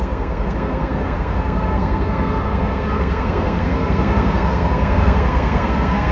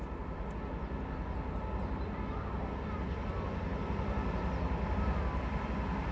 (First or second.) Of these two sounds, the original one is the second